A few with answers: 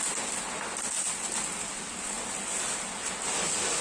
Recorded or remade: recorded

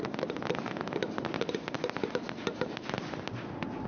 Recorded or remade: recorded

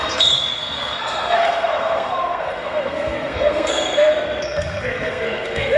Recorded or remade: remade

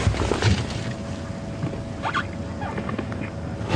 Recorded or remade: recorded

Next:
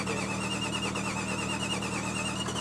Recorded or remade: recorded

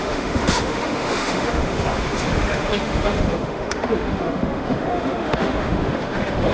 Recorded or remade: remade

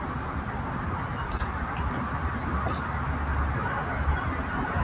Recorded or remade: recorded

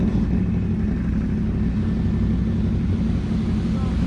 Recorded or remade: recorded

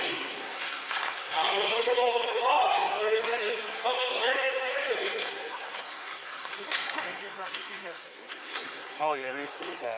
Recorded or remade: remade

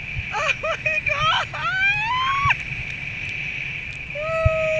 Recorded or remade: recorded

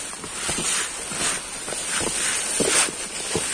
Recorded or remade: recorded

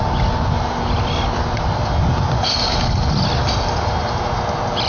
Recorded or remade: recorded